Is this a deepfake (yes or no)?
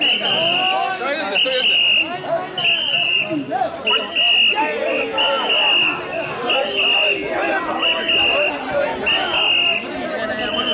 no